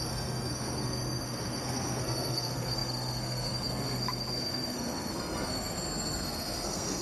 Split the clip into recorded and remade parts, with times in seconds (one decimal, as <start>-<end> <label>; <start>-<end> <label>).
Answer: 0.0-7.0 remade